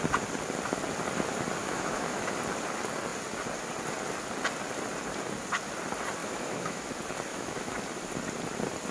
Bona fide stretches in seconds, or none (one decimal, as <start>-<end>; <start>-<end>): 0.0-1.6; 2.3-6.2; 6.8-7.3; 7.8-8.9